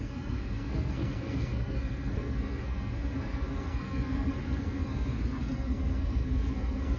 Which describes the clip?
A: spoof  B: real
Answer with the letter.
A